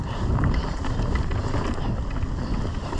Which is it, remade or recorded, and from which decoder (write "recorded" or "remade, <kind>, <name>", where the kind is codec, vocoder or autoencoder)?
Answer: recorded